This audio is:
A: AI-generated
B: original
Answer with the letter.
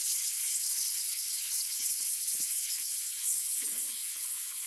A